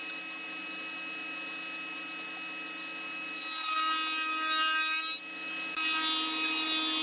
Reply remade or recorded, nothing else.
recorded